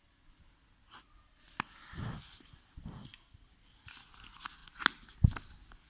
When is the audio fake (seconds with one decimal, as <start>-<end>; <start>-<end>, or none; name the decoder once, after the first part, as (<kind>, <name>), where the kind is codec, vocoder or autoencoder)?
none